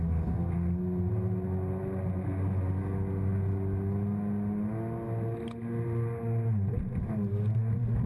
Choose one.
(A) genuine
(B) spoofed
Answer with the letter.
A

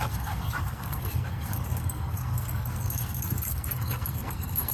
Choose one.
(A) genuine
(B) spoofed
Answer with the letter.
B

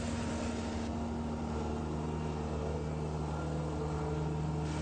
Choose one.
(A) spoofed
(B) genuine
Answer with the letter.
B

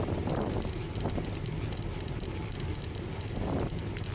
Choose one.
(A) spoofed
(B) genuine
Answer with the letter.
B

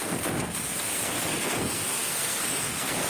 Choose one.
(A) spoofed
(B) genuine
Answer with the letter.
A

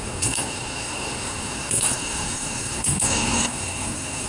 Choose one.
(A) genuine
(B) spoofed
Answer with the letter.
B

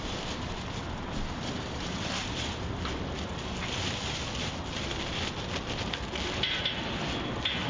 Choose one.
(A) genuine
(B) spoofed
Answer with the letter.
A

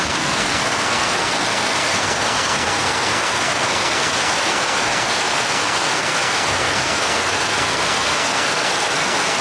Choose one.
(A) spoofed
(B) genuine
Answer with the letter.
A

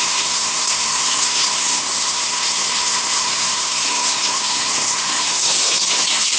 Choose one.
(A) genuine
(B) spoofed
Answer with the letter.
B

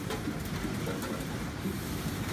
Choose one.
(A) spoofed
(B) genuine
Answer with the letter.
B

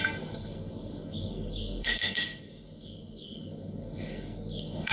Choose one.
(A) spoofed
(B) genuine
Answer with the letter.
A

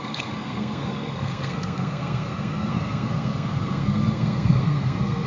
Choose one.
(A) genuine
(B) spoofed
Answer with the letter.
B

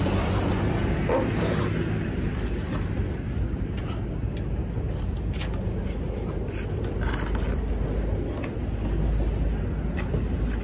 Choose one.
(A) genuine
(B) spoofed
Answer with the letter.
A